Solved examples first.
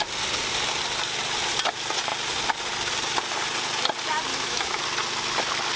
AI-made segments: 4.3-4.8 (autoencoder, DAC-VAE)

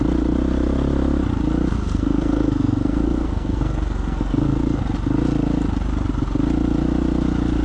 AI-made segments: 1.7-4.8 (codec, SNAC)

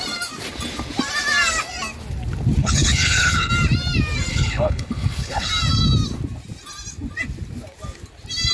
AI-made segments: 2.6-3.5 (codec, HILCodec); 4.3-5.5